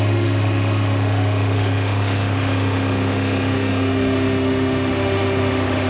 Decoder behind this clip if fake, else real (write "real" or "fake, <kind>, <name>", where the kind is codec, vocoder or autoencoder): fake, autoencoder, DAC-VAE